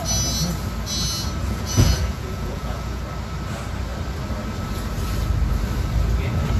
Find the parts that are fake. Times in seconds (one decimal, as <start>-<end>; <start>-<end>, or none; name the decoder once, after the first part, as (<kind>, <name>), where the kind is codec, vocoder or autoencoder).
1.4-3.0 (vocoder, Vocos)